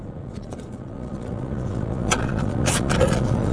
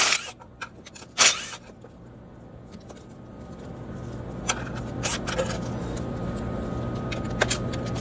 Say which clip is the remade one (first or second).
first